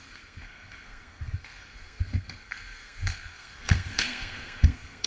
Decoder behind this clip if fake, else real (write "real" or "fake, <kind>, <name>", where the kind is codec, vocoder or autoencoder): fake, codec, SNAC